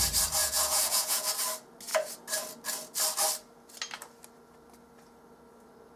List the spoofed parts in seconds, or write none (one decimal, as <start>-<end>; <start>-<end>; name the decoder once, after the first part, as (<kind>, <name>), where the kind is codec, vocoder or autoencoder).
0.4-1.3 (vocoder, Vocos)

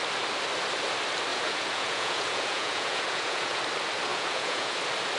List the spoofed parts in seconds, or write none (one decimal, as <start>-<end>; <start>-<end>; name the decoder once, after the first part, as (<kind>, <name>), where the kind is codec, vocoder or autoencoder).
1.3-3.6 (vocoder, Vocos); 4.1-4.8

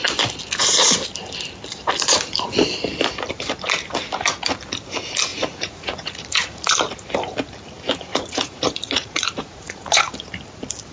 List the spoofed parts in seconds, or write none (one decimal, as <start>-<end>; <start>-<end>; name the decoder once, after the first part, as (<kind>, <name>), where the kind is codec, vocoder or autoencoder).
5.3-6.7 (vocoder, Vocos); 8.1-10.1

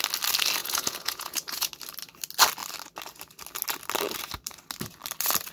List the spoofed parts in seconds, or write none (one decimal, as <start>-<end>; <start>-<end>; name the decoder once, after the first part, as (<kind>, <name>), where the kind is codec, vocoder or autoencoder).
0.6-1.7 (vocoder, Vocos)

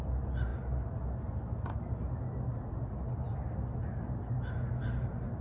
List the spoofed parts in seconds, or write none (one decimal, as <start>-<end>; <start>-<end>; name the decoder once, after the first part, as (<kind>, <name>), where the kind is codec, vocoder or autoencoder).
none

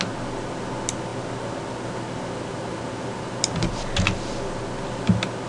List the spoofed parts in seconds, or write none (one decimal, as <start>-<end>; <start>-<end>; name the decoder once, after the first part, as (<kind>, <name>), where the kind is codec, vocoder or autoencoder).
none